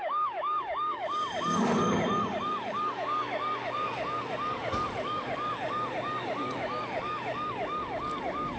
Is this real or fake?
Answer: fake